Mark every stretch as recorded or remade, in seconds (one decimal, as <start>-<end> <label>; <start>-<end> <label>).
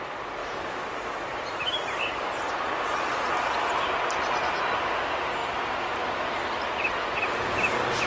0.0-8.1 recorded